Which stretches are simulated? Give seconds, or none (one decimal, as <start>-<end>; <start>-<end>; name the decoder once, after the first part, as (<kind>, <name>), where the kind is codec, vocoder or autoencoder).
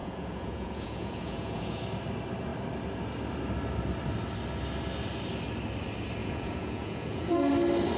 0.0-1.8 (vocoder, Vocos); 6.2-7.5